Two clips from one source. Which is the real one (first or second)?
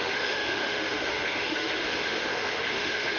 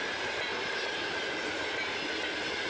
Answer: second